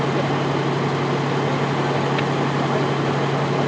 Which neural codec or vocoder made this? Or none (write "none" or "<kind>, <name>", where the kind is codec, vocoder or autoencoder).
none